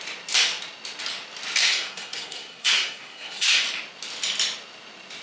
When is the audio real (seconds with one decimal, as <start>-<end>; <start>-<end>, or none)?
0.0-1.6; 3.6-5.2